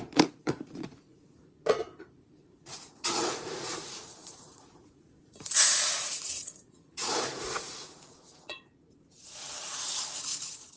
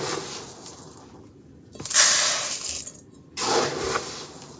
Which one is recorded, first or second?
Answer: second